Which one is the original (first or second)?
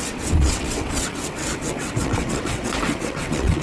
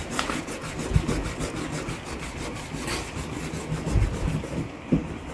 second